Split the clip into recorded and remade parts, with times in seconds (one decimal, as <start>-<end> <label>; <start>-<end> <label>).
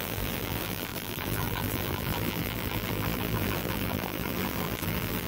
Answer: 0.0-5.3 remade